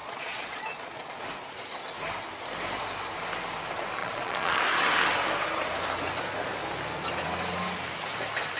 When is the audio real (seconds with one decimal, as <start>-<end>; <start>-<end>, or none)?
1.1-4.0; 4.6-8.6